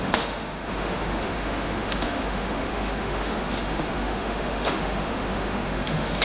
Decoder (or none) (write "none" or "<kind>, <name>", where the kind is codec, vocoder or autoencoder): autoencoder, DAC-VAE